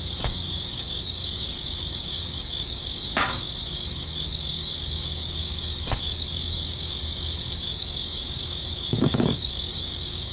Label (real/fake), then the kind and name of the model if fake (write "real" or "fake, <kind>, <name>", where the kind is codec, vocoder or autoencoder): fake, codec, DAC